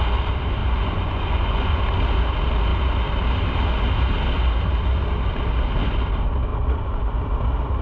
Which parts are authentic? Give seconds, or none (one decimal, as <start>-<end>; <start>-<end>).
0.0-0.6; 1.8-7.8